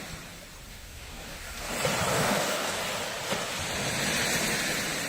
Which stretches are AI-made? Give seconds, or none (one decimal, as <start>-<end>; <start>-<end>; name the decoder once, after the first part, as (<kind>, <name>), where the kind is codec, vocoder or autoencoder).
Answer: 0.7-1.7 (codec, DAC); 2.1-2.8